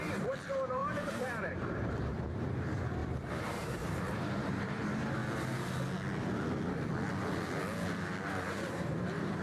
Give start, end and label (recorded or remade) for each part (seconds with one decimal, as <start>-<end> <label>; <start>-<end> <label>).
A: 0.0-5.2 remade; 5.2-8.5 recorded; 8.5-9.4 remade